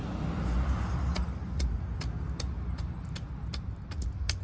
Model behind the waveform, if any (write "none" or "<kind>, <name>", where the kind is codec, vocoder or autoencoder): none